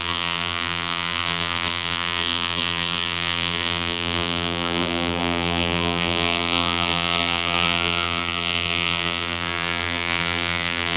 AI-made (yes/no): yes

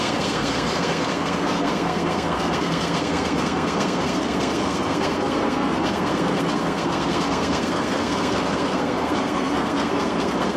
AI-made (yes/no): yes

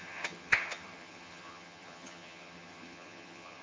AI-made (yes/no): yes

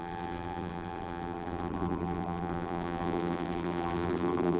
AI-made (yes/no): yes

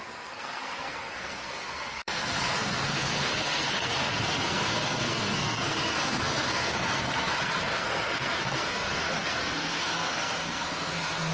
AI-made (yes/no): yes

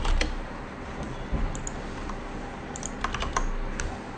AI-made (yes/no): no